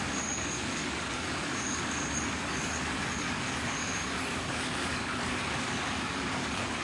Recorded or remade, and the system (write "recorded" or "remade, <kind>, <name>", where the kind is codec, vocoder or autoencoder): remade, codec, DAC